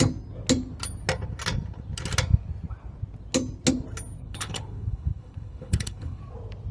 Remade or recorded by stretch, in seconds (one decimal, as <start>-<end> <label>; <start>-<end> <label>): 0.0-4.2 recorded; 4.2-6.2 remade; 6.2-6.7 recorded

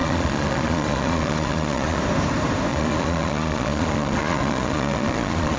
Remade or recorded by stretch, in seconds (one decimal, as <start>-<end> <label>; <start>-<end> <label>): 0.0-2.0 remade; 2.0-2.7 recorded; 2.7-5.6 remade

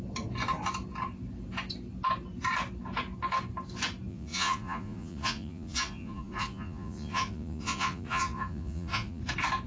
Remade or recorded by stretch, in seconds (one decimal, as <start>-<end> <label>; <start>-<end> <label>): 0.0-4.1 recorded; 4.1-9.2 remade; 9.2-9.7 recorded

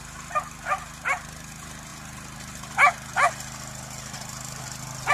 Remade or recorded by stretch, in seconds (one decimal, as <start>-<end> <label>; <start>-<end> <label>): 0.0-5.1 recorded

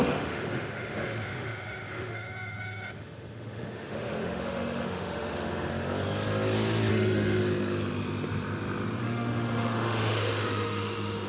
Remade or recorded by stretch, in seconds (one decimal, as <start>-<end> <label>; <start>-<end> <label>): 0.0-5.7 remade; 5.7-6.9 recorded; 6.9-7.4 remade; 7.4-9.0 recorded; 9.0-11.3 remade